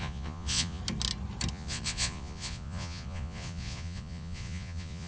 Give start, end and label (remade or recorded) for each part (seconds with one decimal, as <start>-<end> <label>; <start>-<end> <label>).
0.0-0.8 remade; 0.8-1.5 recorded; 1.5-5.1 remade